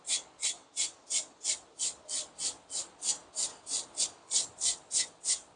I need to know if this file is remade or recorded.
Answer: recorded